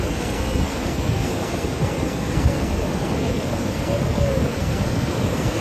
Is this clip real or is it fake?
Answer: fake